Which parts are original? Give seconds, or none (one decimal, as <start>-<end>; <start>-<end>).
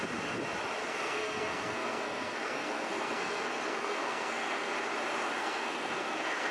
0.0-0.8; 4.7-5.4